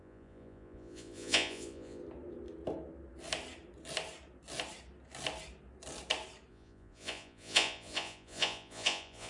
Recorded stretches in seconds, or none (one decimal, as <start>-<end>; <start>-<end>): 2.0-6.5